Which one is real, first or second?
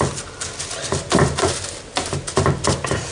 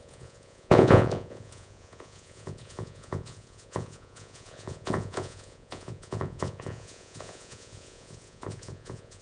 first